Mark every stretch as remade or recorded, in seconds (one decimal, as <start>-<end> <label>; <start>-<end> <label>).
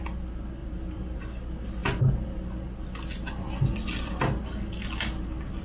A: 0.0-0.6 recorded; 0.6-1.2 remade; 1.2-5.6 recorded